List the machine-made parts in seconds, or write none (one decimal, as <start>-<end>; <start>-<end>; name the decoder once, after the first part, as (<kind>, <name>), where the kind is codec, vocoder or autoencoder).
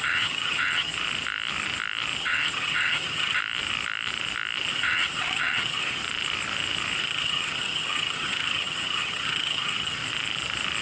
0.0-0.9 (vocoder, HiFi-GAN); 2.2-3.4; 4.7-6.0; 7.0-10.0